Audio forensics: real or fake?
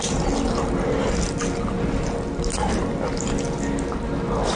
real